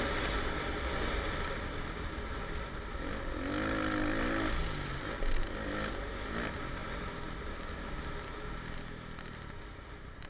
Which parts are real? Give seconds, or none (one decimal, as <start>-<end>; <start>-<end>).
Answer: 0.0-10.3